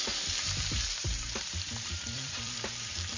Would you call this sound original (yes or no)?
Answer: no